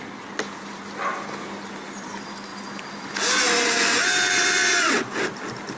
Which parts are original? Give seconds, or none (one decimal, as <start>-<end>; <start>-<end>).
0.0-5.8